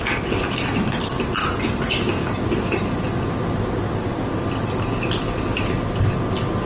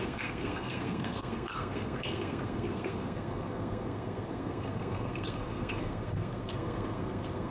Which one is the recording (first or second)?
first